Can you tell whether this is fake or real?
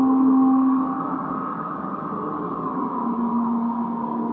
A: fake